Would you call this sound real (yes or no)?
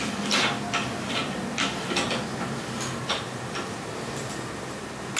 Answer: yes